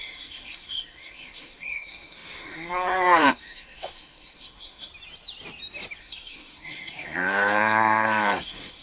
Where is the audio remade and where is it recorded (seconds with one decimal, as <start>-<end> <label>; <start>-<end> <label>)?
0.0-4.9 remade; 4.9-6.0 recorded; 6.0-8.8 remade